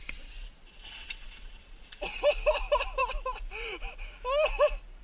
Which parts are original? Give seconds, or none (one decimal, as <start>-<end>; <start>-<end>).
2.0-5.0